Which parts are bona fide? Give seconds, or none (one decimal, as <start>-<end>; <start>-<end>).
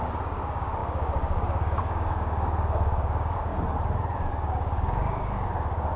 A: 3.5-4.3